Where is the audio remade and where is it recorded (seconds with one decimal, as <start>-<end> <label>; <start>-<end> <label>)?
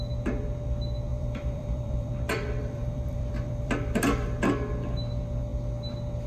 0.0-1.1 recorded; 1.1-2.1 remade; 2.1-2.6 recorded; 2.6-4.4 remade; 4.4-6.3 recorded